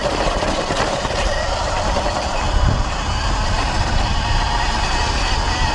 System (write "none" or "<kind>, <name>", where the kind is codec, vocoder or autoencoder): none